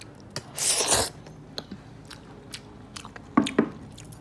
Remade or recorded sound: recorded